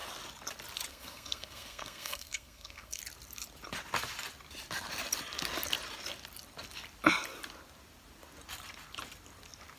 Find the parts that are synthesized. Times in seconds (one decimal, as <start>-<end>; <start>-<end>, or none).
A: 0.9-3.0